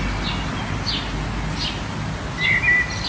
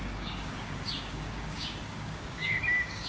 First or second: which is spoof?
second